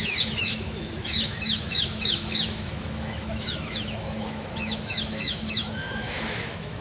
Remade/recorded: remade